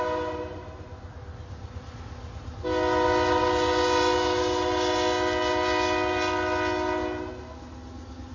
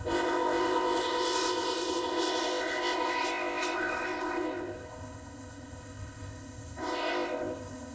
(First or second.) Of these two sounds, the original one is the first